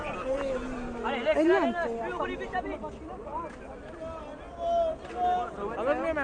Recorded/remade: recorded